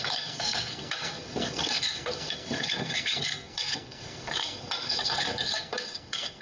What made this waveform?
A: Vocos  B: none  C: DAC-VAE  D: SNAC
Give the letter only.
D